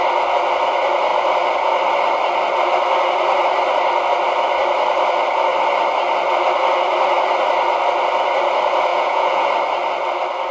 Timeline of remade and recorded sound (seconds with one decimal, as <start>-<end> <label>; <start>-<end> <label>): 0.0-8.9 recorded; 8.9-9.5 remade; 9.5-10.5 recorded